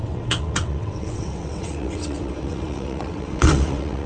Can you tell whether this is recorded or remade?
remade